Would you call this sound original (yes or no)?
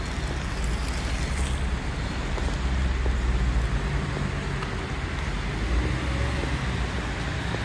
yes